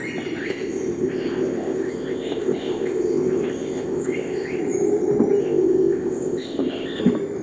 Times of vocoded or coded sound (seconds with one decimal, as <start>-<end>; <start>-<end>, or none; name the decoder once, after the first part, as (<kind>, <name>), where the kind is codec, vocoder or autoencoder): 0.4-4.6 (codec, ZipCodec); 5.4-7.0